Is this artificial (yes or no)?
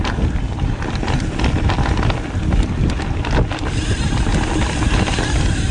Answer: no